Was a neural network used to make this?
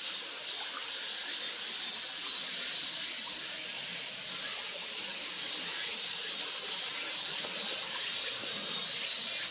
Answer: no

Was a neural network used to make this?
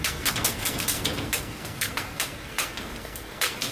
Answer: yes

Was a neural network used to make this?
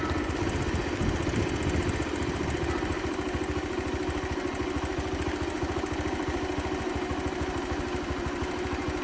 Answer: no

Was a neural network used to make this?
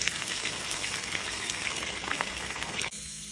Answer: yes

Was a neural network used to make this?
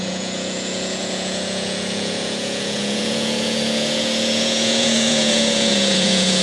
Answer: yes